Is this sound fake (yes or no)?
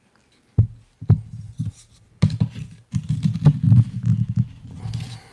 no